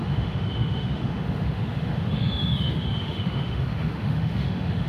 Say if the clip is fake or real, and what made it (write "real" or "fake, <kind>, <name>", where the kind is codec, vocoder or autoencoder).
fake, autoencoder, DAC-VAE